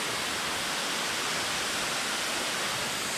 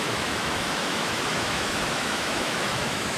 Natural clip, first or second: first